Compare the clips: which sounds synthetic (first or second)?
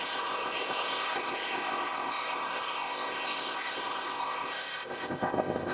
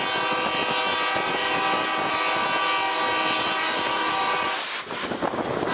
first